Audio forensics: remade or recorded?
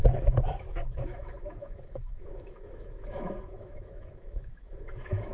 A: remade